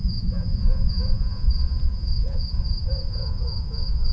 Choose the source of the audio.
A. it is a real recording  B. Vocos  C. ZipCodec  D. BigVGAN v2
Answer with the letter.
B